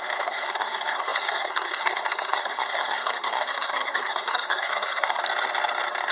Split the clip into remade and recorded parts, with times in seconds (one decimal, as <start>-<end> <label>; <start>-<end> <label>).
0.0-5.2 remade; 5.2-6.1 recorded